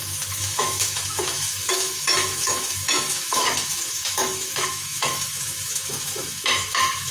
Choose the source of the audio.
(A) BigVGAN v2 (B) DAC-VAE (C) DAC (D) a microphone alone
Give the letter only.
B